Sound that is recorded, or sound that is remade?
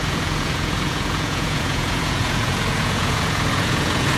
remade